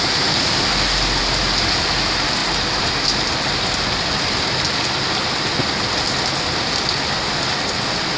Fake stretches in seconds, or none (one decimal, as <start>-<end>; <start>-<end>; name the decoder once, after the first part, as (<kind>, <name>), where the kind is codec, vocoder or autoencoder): none